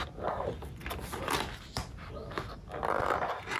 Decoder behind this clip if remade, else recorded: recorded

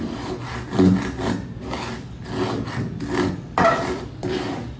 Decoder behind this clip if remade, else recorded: recorded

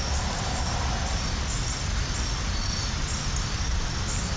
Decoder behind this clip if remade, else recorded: recorded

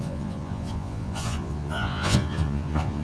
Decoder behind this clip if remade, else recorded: remade, vocoder, Vocos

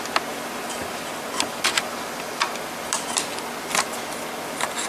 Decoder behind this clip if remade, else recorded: recorded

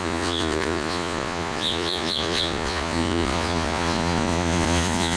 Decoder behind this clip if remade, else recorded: remade, vocoder, Vocos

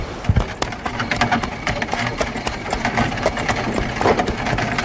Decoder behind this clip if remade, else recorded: recorded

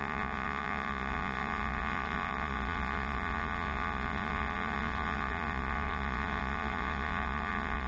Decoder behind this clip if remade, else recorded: remade, vocoder, Vocos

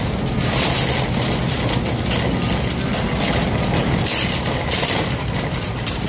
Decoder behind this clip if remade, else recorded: recorded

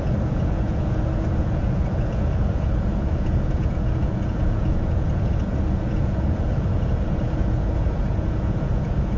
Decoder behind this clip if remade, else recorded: remade, vocoder, Vocos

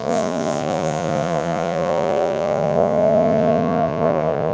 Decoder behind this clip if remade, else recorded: remade, vocoder, Vocos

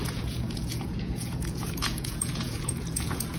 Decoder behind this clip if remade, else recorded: remade, vocoder, Vocos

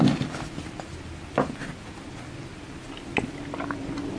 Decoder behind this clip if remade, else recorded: recorded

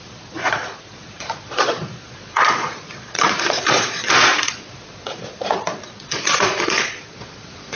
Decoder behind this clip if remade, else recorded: remade, vocoder, Vocos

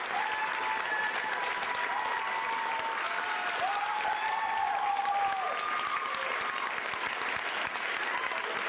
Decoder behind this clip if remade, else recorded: recorded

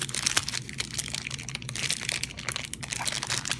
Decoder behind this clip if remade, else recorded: recorded